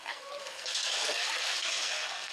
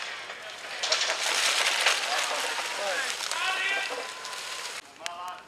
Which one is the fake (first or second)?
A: first